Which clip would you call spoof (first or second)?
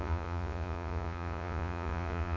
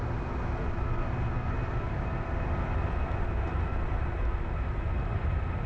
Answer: first